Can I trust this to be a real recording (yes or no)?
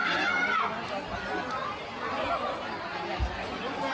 yes